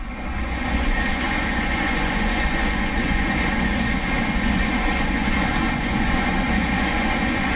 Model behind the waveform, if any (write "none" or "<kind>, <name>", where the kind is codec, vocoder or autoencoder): vocoder, Vocos